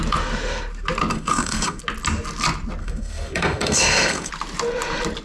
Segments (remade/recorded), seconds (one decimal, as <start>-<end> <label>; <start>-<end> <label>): 0.0-1.1 recorded; 1.1-1.8 remade; 1.8-2.8 recorded; 2.8-4.3 remade; 4.3-5.2 recorded